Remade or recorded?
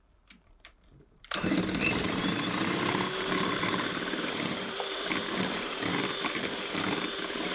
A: remade